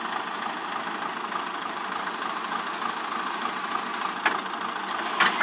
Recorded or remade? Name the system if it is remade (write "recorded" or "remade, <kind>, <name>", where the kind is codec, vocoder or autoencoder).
recorded